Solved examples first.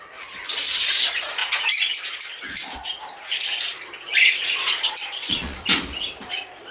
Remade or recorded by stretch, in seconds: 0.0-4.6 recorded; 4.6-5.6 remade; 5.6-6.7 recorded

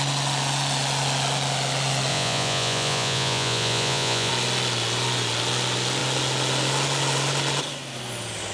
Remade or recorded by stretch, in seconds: 0.0-2.1 recorded; 2.1-4.3 remade; 4.3-8.5 recorded

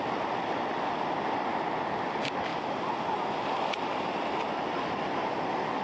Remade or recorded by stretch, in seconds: 0.0-5.8 recorded